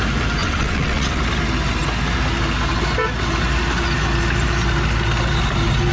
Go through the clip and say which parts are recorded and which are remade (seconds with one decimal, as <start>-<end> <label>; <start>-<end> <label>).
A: 0.0-0.4 recorded; 0.4-1.2 remade; 1.2-5.9 recorded

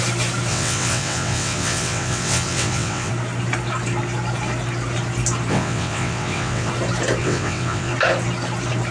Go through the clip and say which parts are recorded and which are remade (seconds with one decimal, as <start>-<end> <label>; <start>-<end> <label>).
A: 0.0-0.5 recorded; 0.5-3.1 remade; 3.1-5.5 recorded; 5.5-6.7 remade; 6.7-7.2 recorded; 7.2-7.9 remade; 7.9-8.9 recorded

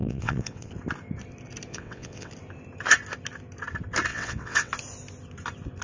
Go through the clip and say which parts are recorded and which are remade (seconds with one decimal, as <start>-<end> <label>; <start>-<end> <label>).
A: 0.0-0.7 remade; 0.7-1.7 recorded; 1.7-2.3 remade; 2.3-4.1 recorded; 4.1-4.7 remade; 4.7-5.8 recorded